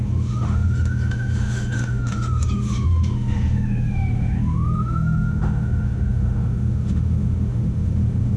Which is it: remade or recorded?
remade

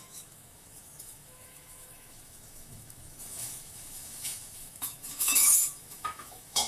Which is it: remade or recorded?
remade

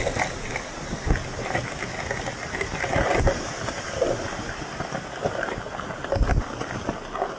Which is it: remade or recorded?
recorded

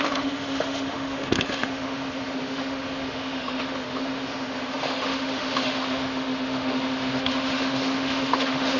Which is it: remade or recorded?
remade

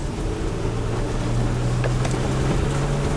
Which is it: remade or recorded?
recorded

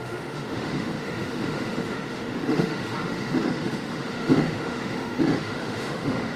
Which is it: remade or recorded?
remade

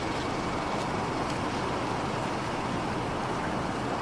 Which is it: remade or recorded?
recorded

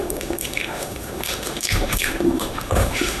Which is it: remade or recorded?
remade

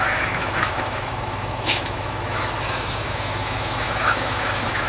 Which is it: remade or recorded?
remade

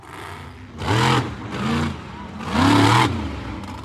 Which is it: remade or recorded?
recorded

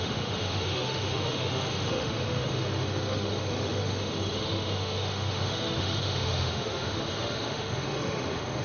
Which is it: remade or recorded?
remade